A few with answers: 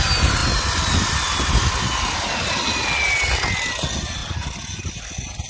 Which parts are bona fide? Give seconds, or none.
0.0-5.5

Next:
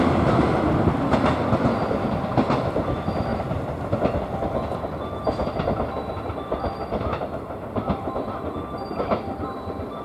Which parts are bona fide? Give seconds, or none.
0.0-10.0

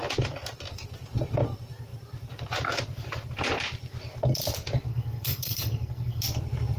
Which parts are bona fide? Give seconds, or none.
0.0-4.9; 6.2-6.8

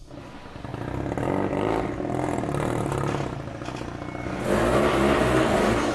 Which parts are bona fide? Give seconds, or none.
0.0-5.9

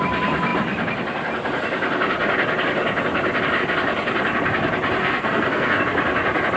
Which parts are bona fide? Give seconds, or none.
0.0-5.0; 5.8-6.6

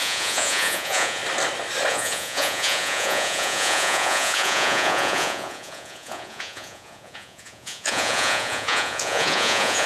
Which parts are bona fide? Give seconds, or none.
1.2-1.9